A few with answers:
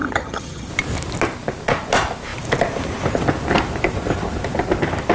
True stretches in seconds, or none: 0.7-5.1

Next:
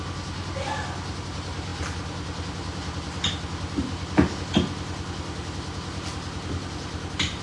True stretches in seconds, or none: 0.0-7.4

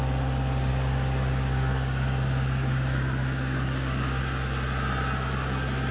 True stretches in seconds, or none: 0.0-0.7; 4.2-5.9

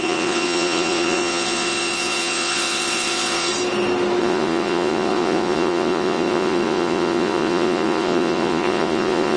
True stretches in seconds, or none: 3.5-4.2

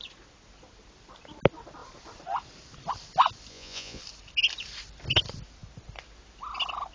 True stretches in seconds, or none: 0.0-3.5; 4.0-6.9